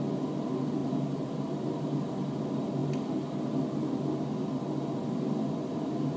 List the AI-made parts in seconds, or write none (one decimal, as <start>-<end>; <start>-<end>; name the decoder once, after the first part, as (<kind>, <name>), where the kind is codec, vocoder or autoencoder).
0.8-2.4 (vocoder, BigVGAN v2)